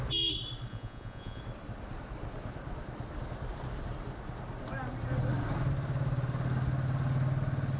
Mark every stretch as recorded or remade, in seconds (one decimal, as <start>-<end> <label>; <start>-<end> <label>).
0.0-0.7 recorded; 0.7-1.4 remade; 1.4-7.8 recorded